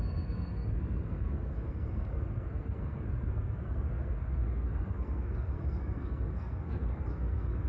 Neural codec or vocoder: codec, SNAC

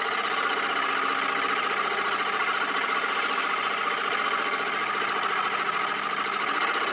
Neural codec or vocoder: none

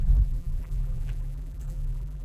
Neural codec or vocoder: vocoder, BigVGAN v2